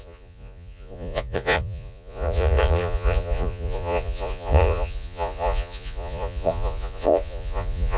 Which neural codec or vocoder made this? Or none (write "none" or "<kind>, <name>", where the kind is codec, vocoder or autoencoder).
vocoder, Vocos